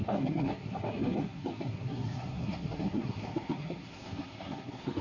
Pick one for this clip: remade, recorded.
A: remade